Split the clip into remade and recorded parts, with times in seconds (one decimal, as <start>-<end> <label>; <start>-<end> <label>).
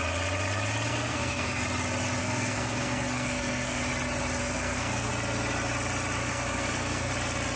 0.0-0.9 recorded; 0.9-1.6 remade; 1.6-2.2 recorded; 2.2-3.8 remade; 3.8-4.4 recorded; 4.4-5.1 remade; 5.1-6.2 recorded; 6.2-7.1 remade; 7.1-7.6 recorded